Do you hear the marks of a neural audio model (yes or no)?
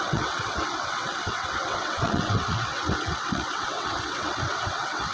yes